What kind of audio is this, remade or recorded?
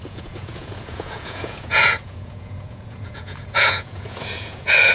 remade